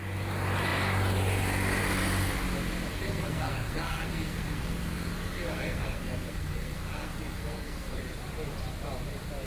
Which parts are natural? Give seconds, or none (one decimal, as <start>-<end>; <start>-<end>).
0.0-2.9; 8.0-9.5